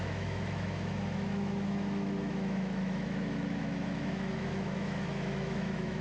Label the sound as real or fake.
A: fake